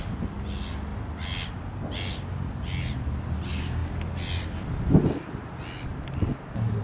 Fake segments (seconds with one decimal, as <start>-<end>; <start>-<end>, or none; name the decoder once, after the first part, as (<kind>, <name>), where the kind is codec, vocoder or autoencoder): none

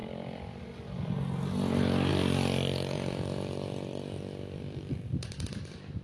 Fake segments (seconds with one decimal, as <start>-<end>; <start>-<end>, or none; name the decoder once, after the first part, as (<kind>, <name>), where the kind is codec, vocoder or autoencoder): 0.0-0.6 (vocoder, BigVGAN v2); 2.1-5.3

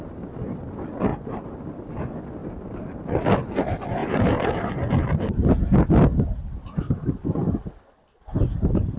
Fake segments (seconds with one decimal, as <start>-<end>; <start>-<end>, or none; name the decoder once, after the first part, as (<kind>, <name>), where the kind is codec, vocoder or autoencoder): 1.1-2.0 (vocoder, BigVGAN v2); 2.4-3.0; 4.0-4.7; 6.4-7.2

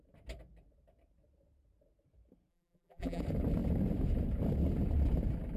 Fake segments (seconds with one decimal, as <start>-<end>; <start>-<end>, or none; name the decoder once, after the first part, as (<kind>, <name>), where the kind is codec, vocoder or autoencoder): 2.5-3.2 (vocoder, BigVGAN v2)

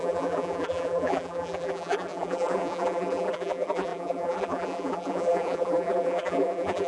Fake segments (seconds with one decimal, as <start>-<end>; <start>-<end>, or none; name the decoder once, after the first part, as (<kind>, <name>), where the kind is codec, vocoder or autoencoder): 0.0-6.9 (vocoder, BigVGAN v2)

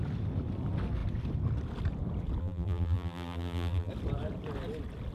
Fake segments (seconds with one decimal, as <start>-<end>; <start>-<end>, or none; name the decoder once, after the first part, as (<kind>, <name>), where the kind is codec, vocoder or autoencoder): 2.4-3.9 (vocoder, BigVGAN v2)

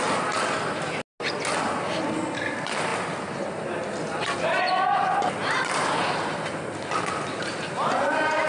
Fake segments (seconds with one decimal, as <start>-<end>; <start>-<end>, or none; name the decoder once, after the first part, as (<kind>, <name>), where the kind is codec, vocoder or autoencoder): none